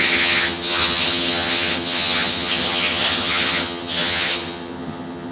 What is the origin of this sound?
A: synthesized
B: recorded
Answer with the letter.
A